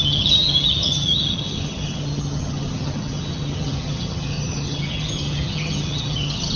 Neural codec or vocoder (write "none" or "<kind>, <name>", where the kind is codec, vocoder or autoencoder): vocoder, HiFi-GAN